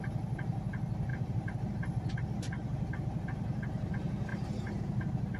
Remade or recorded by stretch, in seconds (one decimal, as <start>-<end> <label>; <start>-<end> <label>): 0.0-1.1 recorded; 1.1-3.9 remade; 3.9-4.3 recorded; 4.3-4.8 remade; 4.8-5.4 recorded